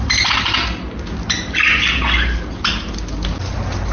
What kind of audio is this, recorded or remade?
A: recorded